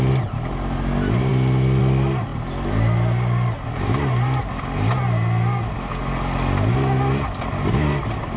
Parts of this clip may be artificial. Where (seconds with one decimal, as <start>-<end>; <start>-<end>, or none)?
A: none